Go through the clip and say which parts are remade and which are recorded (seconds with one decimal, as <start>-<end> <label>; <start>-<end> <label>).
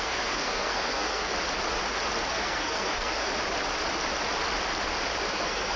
0.0-1.3 remade; 1.3-2.3 recorded; 2.3-3.3 remade; 3.3-5.3 recorded; 5.3-5.8 remade